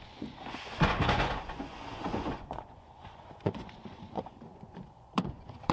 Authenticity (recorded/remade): remade